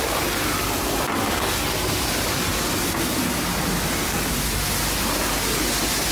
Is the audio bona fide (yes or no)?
yes